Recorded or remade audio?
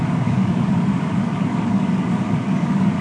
remade